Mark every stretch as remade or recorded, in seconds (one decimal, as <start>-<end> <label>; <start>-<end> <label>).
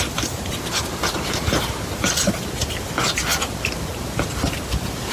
0.0-5.1 recorded